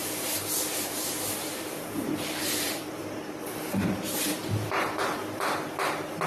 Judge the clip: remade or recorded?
remade